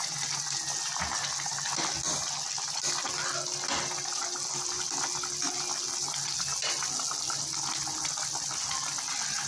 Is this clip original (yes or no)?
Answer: yes